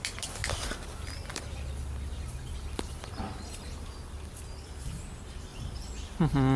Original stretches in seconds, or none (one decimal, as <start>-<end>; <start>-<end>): 0.0-0.4; 4.4-5.5